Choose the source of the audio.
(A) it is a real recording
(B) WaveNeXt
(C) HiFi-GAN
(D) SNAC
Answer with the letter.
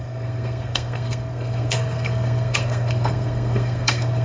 D